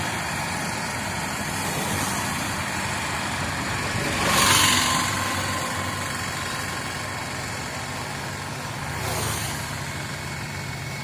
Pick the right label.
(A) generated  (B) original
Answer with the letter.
B